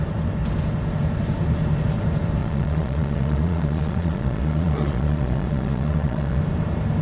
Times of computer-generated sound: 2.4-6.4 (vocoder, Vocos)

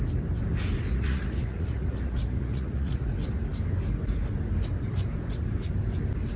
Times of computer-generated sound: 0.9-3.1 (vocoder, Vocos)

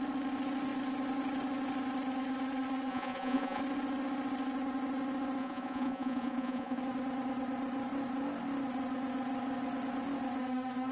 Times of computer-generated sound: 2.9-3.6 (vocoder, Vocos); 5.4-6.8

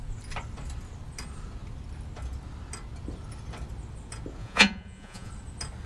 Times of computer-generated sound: 4.4-5.3 (vocoder, Vocos)

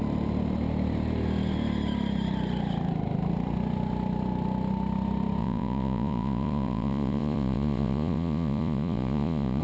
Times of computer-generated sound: 5.4-9.6 (vocoder, Vocos)

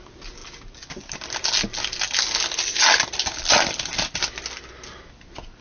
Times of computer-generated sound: none

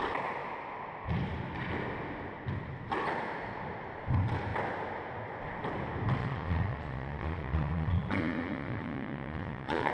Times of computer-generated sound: 6.2-9.9 (vocoder, Vocos)